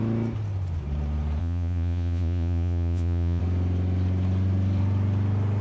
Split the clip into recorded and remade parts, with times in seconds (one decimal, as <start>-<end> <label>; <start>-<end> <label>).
0.0-1.4 recorded; 1.4-3.4 remade; 3.4-5.6 recorded